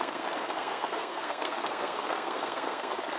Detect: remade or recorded remade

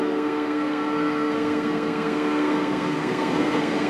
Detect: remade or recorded remade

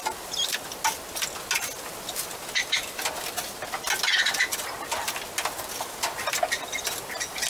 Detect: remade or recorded recorded